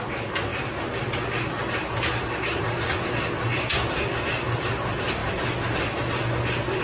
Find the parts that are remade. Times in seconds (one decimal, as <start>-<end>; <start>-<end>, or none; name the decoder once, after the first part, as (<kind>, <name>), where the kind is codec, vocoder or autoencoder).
none

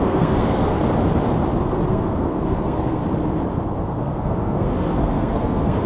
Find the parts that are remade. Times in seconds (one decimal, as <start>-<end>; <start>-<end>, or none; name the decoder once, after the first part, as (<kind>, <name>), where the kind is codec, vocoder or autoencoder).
0.0-0.8 (codec, SNAC); 1.9-3.0; 3.8-5.9

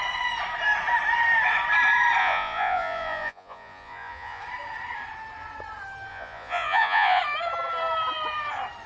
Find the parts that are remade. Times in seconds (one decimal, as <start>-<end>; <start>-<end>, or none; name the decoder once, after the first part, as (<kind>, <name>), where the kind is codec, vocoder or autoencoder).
2.2-4.4 (vocoder, Vocos); 6.1-7.2

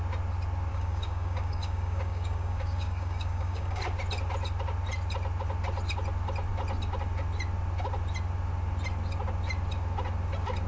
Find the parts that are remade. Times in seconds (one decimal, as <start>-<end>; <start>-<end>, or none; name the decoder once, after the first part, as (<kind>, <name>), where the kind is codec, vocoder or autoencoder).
0.7-3.8 (codec, DAC)

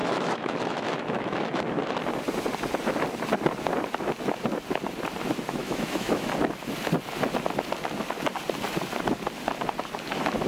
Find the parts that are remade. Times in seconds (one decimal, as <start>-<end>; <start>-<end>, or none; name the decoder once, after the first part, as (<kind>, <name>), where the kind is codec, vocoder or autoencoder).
0.0-1.8 (autoencoder, DAC-VAE); 5.6-6.3